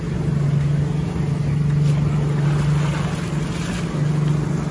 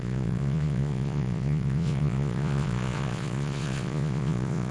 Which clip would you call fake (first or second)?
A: second